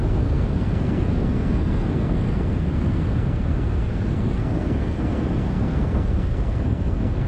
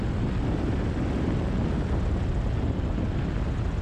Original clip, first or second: second